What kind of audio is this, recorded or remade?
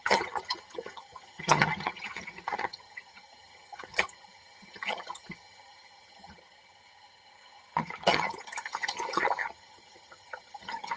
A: remade